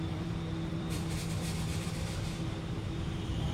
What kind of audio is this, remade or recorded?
remade